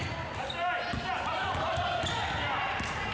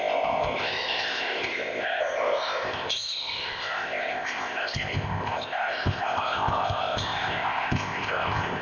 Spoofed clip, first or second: second